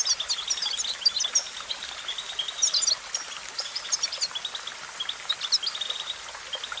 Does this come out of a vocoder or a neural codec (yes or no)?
no